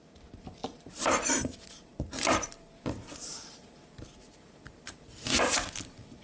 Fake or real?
fake